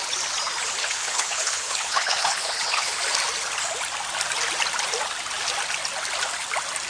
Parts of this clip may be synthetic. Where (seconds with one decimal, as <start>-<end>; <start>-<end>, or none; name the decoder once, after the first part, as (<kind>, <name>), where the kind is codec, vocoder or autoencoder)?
0.8-3.0 (codec, HILCodec)